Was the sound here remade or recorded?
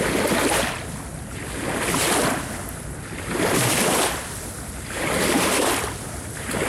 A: recorded